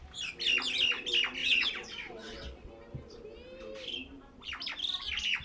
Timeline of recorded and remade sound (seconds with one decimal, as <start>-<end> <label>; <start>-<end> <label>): 0.0-1.4 recorded; 1.4-2.7 remade; 2.7-5.4 recorded